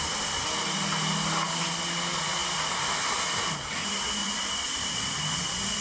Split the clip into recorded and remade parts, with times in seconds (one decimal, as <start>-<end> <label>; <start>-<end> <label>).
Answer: 0.0-4.2 recorded; 4.2-5.1 remade; 5.1-5.8 recorded

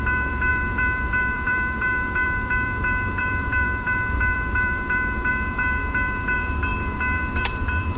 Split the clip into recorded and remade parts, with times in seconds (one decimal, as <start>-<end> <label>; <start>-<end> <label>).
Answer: 0.0-8.0 remade

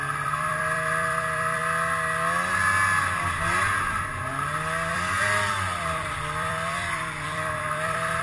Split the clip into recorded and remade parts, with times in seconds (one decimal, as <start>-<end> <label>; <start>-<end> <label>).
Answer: 0.0-1.6 remade; 1.6-4.9 recorded; 4.9-8.2 remade

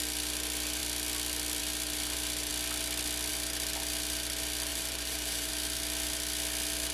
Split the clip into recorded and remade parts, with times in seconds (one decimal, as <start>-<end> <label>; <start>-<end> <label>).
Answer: 0.0-4.7 recorded; 4.7-5.5 remade; 5.5-6.9 recorded